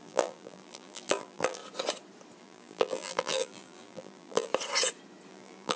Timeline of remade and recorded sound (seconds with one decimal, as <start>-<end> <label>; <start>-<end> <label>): 0.0-1.6 remade; 1.6-2.4 recorded; 2.4-4.5 remade; 4.5-5.3 recorded; 5.3-5.8 remade